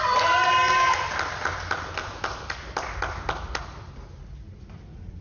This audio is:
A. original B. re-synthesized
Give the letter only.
A